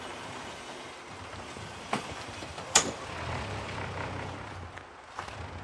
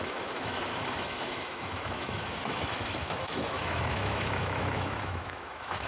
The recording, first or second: first